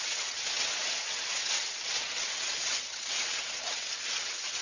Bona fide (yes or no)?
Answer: no